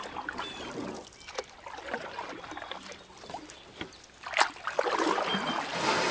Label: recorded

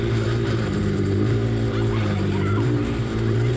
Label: remade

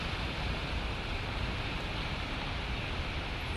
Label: recorded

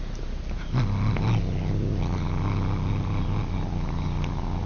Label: recorded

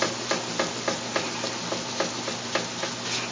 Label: recorded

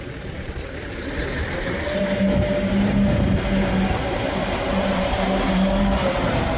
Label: remade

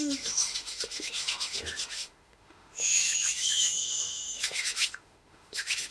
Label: remade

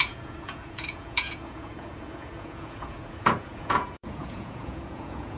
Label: remade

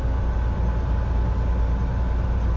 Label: recorded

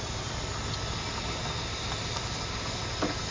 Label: recorded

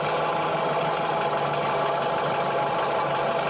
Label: recorded